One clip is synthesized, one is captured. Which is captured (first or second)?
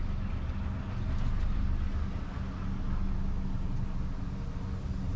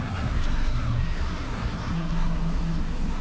first